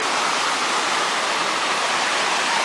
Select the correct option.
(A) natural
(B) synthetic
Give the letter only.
A